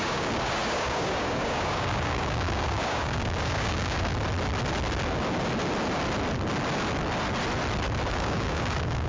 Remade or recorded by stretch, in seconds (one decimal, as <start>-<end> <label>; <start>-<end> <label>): 0.0-4.1 remade; 4.1-8.1 recorded; 8.1-9.1 remade